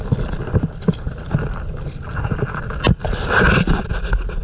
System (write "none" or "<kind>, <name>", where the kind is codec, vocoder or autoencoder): none